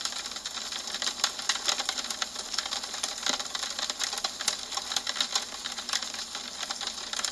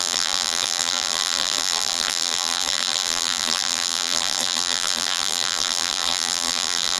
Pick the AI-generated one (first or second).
second